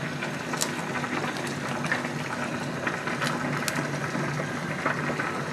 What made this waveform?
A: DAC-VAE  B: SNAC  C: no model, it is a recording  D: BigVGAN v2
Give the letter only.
C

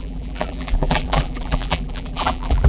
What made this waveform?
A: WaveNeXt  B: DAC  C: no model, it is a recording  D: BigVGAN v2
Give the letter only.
D